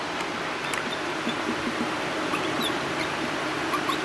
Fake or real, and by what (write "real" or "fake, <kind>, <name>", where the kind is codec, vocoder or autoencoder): fake, vocoder, BigVGAN v2